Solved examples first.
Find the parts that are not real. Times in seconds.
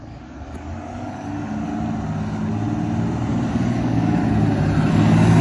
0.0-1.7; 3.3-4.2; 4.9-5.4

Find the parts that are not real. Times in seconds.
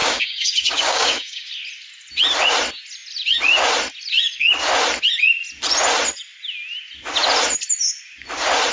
0.0-1.5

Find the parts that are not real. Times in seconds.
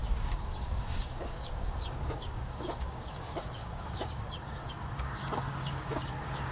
0.0-6.5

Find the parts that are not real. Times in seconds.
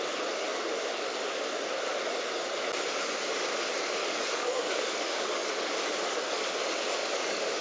4.0-5.5; 7.0-7.6